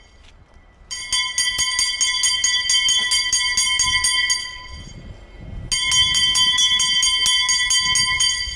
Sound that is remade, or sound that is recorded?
recorded